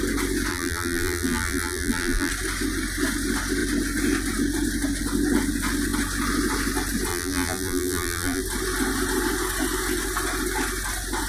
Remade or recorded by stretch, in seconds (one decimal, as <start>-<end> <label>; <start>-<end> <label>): 0.0-0.5 recorded; 0.5-2.3 remade; 2.3-7.1 recorded; 7.1-8.4 remade; 8.4-11.3 recorded